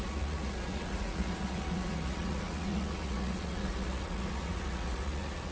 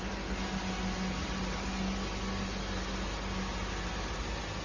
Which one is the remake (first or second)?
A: first